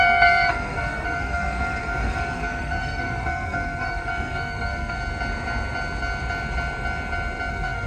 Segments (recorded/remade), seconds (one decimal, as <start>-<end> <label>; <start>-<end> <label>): 0.0-5.0 remade; 5.0-7.5 recorded; 7.5-7.9 remade